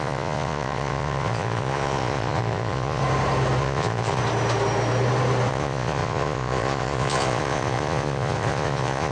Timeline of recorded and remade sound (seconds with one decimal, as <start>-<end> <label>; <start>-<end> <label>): 0.0-3.0 remade; 3.0-3.6 recorded; 3.6-4.2 remade; 4.2-5.5 recorded; 5.5-9.1 remade